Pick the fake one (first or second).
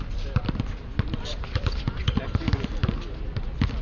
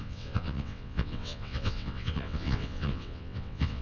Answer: second